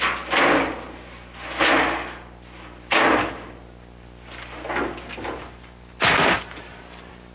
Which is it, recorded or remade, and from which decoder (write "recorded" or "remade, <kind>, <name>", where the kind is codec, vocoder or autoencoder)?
recorded